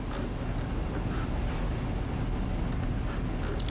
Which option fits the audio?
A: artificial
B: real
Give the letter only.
B